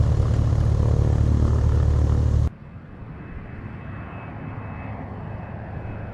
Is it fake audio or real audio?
real